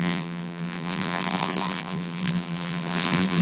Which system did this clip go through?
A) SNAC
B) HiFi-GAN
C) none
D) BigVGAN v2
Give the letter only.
D